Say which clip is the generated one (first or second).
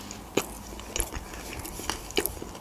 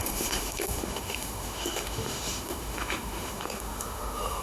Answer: second